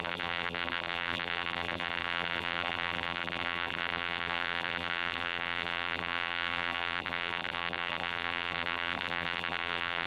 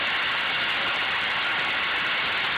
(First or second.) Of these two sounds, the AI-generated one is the first